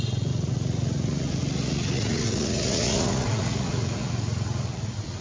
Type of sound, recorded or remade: remade